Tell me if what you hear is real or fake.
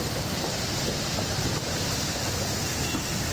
fake